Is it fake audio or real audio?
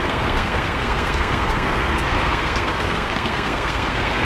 fake